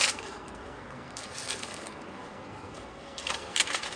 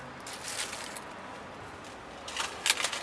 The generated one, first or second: first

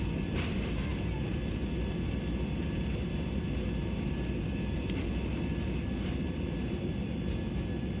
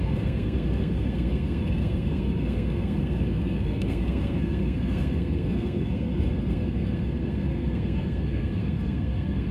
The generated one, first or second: second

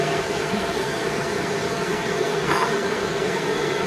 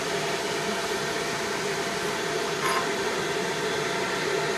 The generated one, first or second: first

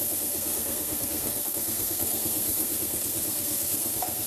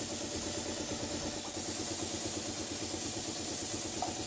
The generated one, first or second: first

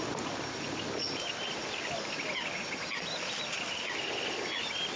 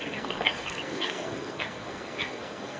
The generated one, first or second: second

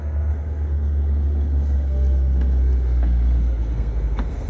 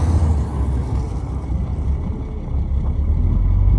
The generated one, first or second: first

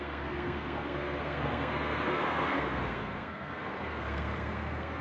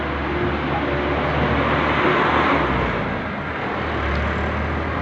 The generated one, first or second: first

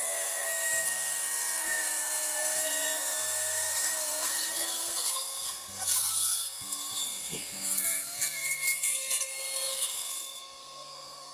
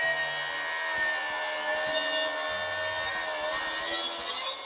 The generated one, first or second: first